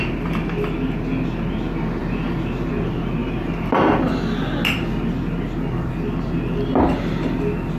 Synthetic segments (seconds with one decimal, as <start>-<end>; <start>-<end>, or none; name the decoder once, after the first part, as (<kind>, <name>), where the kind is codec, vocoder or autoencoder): none